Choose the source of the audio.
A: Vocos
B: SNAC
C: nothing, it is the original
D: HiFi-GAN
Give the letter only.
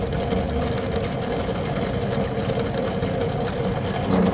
C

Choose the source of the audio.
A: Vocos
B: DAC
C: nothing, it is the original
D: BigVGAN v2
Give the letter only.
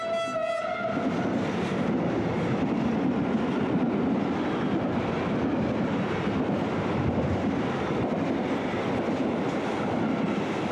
C